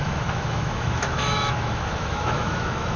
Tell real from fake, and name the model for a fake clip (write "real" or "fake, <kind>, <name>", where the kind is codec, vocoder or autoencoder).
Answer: fake, autoencoder, DAC-VAE